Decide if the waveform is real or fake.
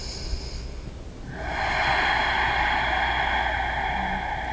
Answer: real